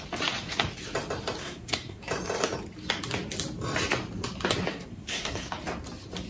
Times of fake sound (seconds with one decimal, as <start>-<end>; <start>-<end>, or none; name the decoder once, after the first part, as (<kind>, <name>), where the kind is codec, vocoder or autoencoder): 1.4-2.0 (codec, SNAC); 4.7-5.5